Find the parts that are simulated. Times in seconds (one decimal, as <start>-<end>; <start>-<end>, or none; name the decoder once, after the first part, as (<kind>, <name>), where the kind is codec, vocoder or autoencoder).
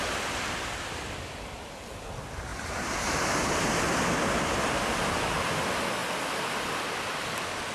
2.5-3.2 (vocoder, BigVGAN v2)